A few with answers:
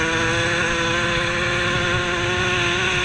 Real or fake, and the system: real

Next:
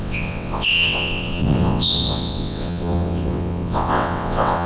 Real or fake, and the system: fake, vocoder, WaveNeXt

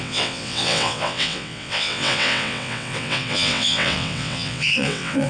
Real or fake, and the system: fake, vocoder, WaveNeXt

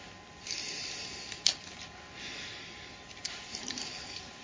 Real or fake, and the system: real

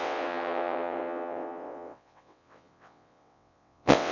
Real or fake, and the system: fake, vocoder, WaveNeXt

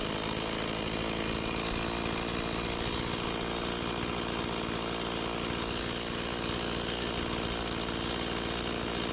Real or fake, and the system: real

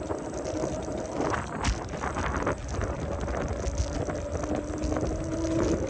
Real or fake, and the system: real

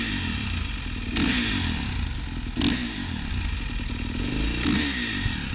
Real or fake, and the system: real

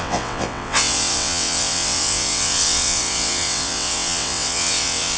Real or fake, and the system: fake, vocoder, WaveNeXt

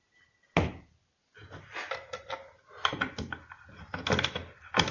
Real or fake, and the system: real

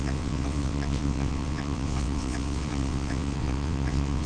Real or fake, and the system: fake, vocoder, WaveNeXt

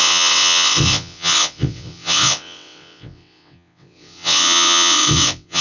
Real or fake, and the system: fake, vocoder, WaveNeXt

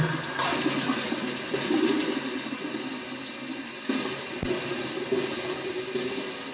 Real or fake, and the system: real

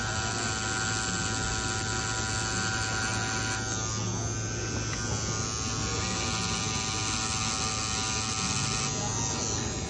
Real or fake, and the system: real